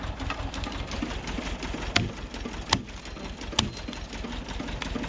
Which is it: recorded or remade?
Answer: recorded